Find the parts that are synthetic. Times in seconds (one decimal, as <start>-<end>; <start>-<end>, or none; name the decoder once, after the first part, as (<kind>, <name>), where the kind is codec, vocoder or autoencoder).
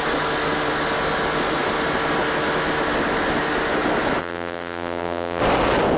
4.2-5.4 (vocoder, BigVGAN v2)